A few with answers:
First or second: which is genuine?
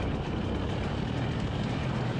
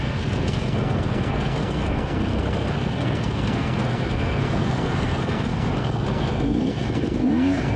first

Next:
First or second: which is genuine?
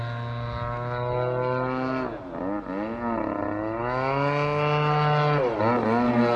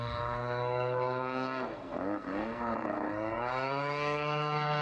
first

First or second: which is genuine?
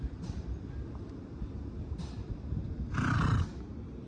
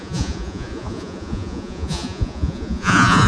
first